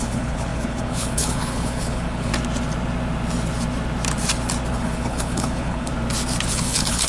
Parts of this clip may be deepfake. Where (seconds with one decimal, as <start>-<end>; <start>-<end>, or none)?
0.0-2.3; 4.7-5.9; 6.5-7.1